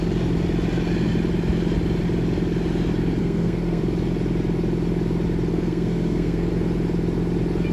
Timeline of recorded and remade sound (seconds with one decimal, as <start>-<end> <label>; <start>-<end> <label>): 0.0-3.2 recorded; 3.2-3.8 remade; 3.8-5.5 recorded; 5.5-6.5 remade; 6.5-7.7 recorded